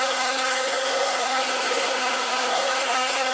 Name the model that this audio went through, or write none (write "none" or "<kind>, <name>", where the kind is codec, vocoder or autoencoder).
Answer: codec, SNAC